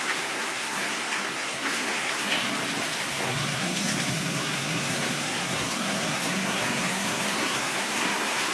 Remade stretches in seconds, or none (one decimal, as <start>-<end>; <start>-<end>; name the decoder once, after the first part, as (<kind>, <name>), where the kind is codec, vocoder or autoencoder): 0.0-2.4 (codec, SNAC); 3.1-8.5